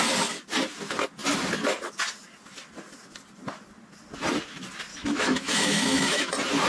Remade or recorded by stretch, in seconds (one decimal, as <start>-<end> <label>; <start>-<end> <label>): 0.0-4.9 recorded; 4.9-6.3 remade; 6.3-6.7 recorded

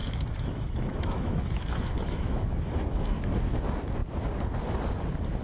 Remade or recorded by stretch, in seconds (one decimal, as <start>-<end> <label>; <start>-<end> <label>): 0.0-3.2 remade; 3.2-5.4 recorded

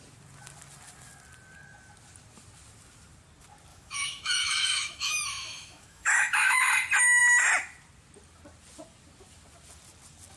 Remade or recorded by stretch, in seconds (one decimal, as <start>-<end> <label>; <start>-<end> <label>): 0.0-3.7 recorded; 3.7-6.7 remade; 6.7-10.4 recorded

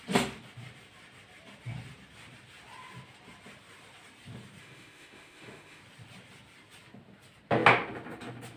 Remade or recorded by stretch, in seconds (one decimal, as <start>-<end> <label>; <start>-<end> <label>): 0.0-4.6 recorded; 4.6-5.8 remade; 5.8-8.6 recorded